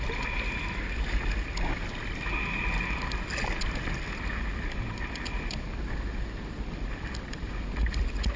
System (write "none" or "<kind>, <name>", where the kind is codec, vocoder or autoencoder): none